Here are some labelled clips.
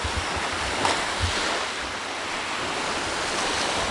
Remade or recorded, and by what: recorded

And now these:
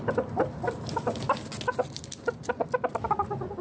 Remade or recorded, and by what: recorded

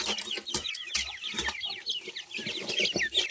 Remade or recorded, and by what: recorded